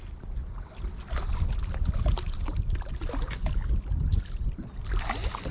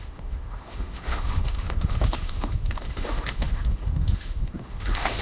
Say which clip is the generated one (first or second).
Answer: second